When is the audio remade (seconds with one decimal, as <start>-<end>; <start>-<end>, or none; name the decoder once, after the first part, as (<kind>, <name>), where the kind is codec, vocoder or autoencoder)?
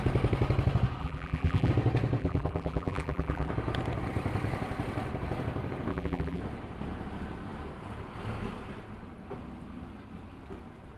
1.0-1.7 (vocoder, BigVGAN v2); 2.2-3.5; 5.9-6.4